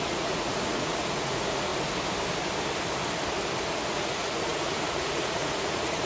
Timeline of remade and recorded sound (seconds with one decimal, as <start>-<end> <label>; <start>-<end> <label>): 0.0-1.7 remade; 1.7-3.7 recorded; 3.7-6.1 remade